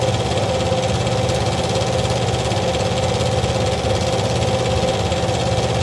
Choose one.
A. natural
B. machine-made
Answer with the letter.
A